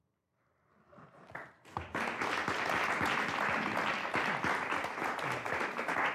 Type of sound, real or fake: real